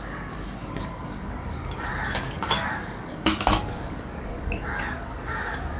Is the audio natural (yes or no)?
no